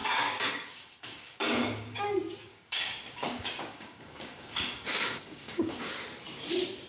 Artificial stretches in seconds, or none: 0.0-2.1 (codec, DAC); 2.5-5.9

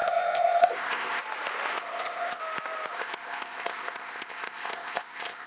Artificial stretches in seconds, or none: 0.0-1.2 (codec, ZipCodec); 1.7-2.4; 2.9-5.5

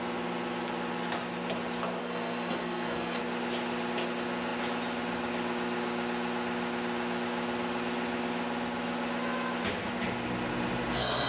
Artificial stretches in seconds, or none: 2.0-3.2 (codec, SNAC)

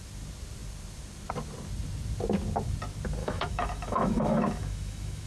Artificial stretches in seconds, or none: 3.2-5.3 (autoencoder, DAC-VAE)